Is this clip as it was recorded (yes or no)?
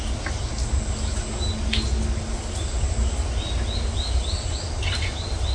yes